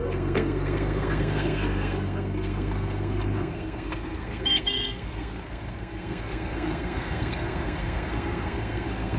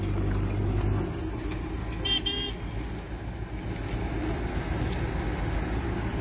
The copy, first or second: first